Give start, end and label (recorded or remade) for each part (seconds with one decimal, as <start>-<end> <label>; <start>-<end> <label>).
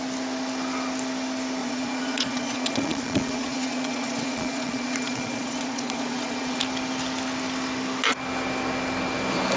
0.0-1.6 recorded; 1.6-6.6 remade; 6.6-9.6 recorded